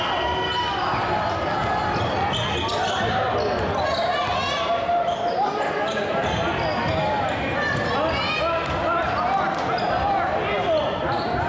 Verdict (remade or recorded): recorded